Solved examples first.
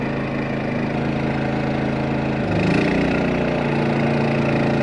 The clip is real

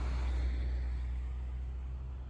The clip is real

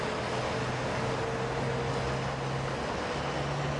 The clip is real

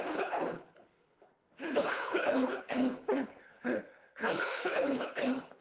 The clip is fake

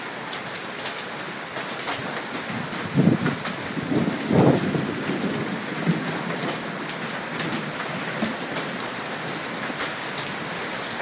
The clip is real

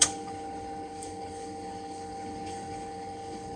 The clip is fake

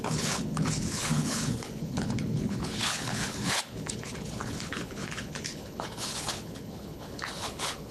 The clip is fake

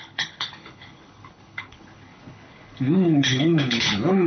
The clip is fake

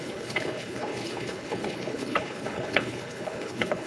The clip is fake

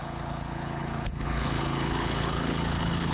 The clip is fake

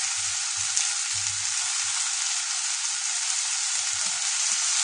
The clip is real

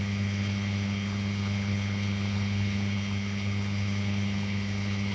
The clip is fake